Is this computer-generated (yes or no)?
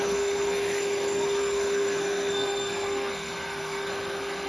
yes